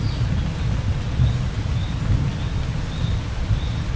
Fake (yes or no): no